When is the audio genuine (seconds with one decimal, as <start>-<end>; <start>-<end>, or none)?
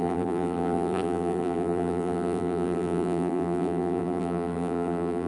none